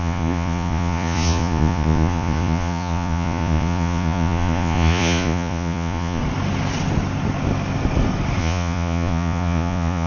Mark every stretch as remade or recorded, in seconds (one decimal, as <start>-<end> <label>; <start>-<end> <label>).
0.0-6.2 remade; 6.2-8.4 recorded; 8.4-10.1 remade